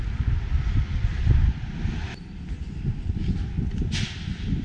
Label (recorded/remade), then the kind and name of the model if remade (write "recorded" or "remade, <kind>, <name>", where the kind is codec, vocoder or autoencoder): recorded